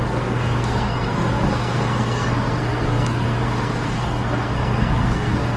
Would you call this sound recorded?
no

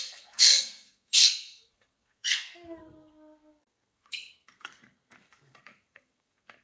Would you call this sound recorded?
no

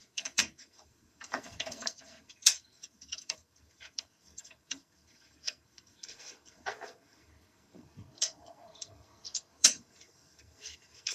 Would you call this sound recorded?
no